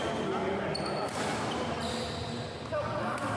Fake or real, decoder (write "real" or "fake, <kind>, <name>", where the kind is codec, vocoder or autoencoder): real